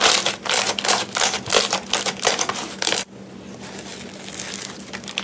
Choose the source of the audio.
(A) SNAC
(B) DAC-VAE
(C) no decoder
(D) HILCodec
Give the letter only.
C